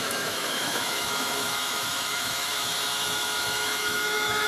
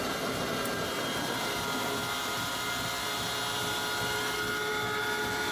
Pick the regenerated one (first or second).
first